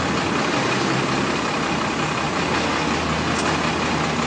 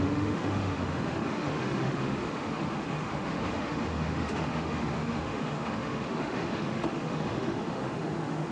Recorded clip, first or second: first